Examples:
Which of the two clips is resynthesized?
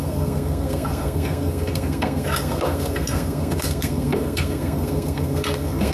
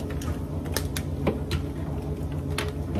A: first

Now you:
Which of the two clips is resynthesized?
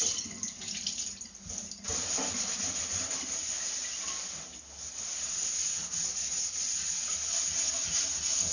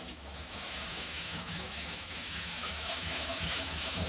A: second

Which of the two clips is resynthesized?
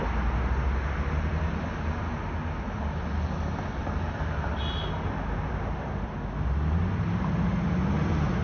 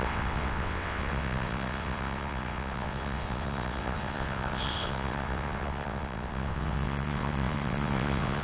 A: second